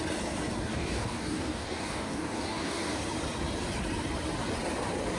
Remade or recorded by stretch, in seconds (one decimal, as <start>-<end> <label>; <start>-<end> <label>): 0.0-0.7 recorded; 0.7-3.0 remade; 3.0-5.2 recorded